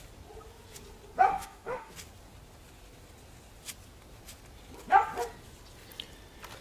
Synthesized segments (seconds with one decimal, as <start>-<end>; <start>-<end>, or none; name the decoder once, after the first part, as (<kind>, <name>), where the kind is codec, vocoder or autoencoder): 1.3-1.9 (autoencoder, DAC-VAE)